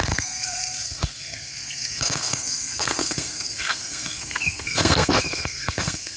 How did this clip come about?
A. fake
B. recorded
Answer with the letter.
A